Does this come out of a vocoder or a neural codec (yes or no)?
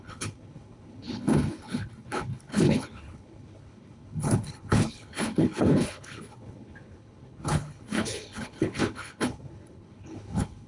yes